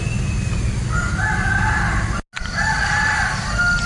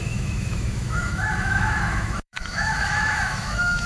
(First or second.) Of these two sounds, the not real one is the second